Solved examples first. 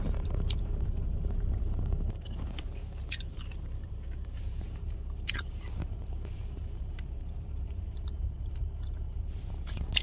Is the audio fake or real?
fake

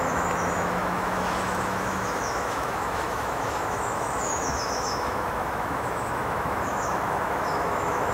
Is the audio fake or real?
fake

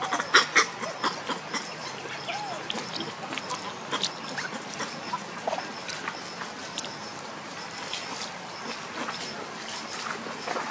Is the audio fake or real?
real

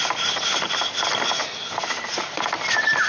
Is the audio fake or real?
real